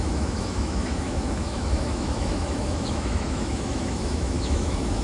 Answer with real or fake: fake